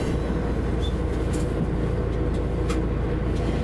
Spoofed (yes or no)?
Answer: no